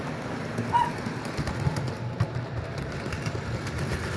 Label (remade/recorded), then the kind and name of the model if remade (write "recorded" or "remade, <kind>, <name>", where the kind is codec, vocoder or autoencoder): recorded